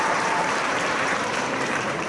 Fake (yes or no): yes